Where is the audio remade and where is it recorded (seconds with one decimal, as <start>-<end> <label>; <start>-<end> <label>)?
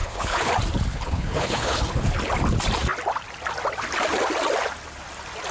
0.0-0.5 remade; 0.5-0.9 recorded; 0.9-2.1 remade; 2.1-5.5 recorded